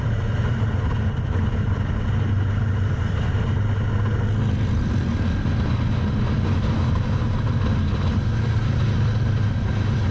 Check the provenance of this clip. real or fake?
real